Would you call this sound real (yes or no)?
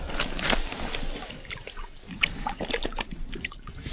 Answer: yes